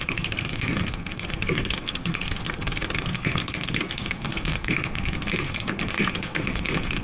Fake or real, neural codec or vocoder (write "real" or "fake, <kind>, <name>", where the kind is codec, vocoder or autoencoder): fake, codec, SNAC